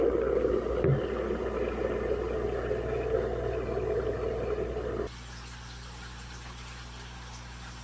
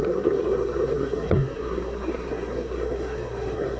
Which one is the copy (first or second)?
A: second